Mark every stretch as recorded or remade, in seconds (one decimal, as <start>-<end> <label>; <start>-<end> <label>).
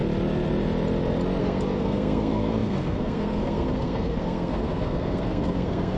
0.0-1.4 recorded; 1.4-6.0 remade